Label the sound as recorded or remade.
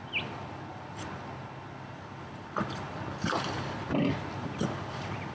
recorded